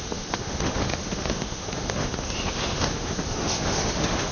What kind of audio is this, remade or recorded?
remade